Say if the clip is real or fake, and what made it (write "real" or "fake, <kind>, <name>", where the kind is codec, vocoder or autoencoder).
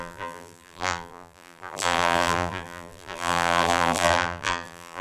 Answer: fake, vocoder, BigVGAN v2